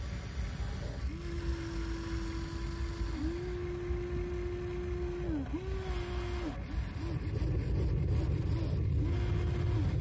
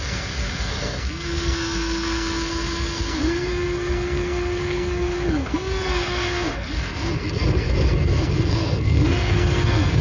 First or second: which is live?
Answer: first